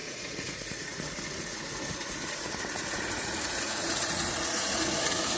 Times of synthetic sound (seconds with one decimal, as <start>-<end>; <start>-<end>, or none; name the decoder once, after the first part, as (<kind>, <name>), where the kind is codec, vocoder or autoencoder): 0.0-5.4 (vocoder, Vocos)